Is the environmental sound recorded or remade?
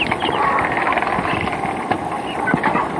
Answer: recorded